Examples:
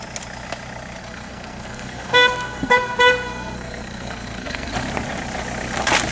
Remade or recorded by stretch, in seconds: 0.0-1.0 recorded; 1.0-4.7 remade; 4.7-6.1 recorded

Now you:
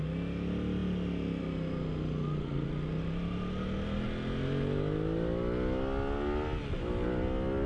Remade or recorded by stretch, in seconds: 0.0-7.7 recorded

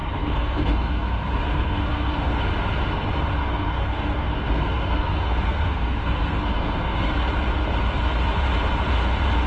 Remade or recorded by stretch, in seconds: 0.0-2.4 remade; 2.4-3.4 recorded; 3.4-7.1 remade; 7.1-9.5 recorded

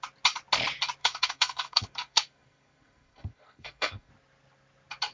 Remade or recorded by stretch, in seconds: 0.0-1.0 recorded; 1.0-4.1 remade; 4.1-5.1 recorded